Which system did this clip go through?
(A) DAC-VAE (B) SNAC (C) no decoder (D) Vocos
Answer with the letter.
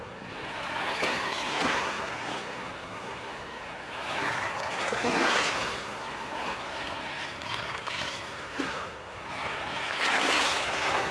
B